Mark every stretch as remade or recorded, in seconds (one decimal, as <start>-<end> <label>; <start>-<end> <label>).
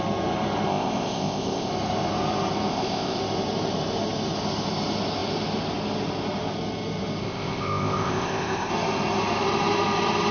0.0-0.7 recorded; 0.7-1.7 remade; 1.7-2.7 recorded; 2.7-3.2 remade; 3.2-7.2 recorded; 7.2-8.7 remade; 8.7-10.3 recorded